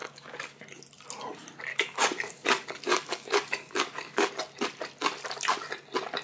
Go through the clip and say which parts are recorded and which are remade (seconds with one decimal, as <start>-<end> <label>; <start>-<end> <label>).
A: 0.0-0.6 remade; 0.6-1.7 recorded; 1.7-4.3 remade; 4.3-6.2 recorded